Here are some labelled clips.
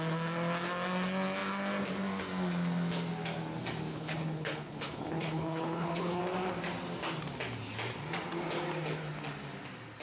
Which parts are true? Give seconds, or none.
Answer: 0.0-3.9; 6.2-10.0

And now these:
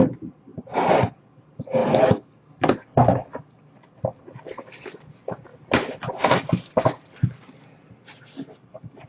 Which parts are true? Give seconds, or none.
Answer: 0.0-9.1

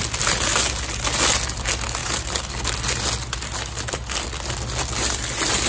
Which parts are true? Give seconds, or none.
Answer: 0.0-2.0; 2.5-5.7

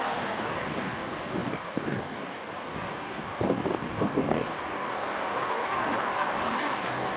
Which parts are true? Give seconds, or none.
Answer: none